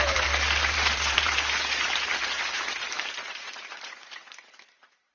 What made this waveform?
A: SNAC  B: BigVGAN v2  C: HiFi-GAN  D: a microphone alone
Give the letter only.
B